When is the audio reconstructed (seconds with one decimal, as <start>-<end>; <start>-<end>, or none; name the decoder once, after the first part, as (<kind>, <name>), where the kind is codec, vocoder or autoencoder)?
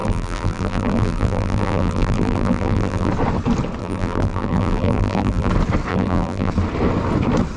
0.0-3.1 (vocoder, BigVGAN v2); 3.8-5.5; 5.9-6.5